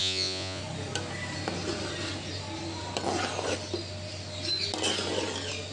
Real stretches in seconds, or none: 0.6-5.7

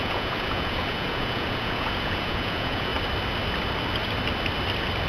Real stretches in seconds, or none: 2.9-5.1

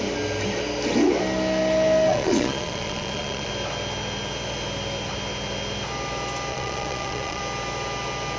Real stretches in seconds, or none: 0.0-2.1; 3.5-6.5; 7.4-8.4

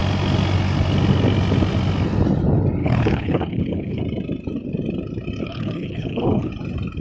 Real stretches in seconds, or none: 0.0-2.8; 4.0-5.4; 6.5-7.0